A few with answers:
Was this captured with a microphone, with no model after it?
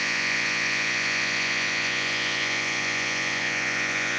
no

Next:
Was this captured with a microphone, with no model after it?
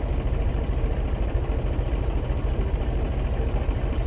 yes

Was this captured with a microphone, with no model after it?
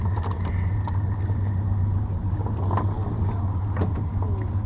yes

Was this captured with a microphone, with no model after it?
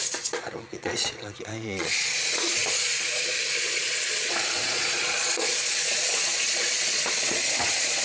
no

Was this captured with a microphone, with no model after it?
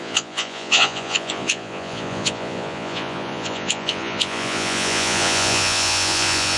no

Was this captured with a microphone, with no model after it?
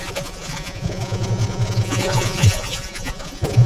no